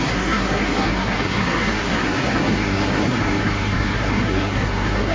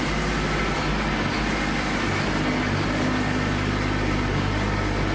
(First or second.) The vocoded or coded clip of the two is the first